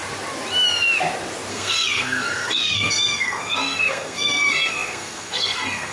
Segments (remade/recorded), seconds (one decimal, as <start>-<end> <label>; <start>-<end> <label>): 0.0-1.5 recorded; 1.5-5.9 remade